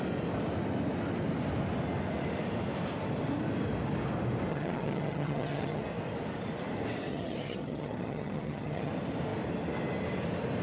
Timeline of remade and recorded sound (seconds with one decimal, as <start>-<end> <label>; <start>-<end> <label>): 0.0-4.5 recorded; 4.5-5.8 remade; 5.8-7.1 recorded; 7.1-8.9 remade; 8.9-10.6 recorded